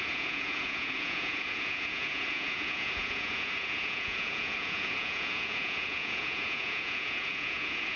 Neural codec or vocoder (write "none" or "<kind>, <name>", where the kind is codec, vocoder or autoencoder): vocoder, Vocos